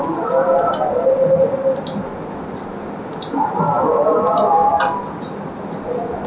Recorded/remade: recorded